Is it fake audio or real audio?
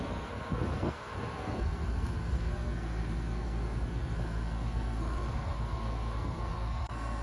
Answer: fake